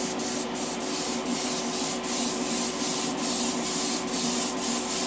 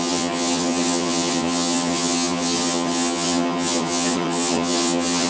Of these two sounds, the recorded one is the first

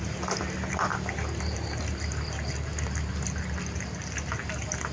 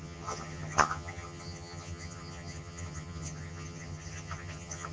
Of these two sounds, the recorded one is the first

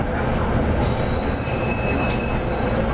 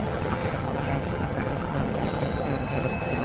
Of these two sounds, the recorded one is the first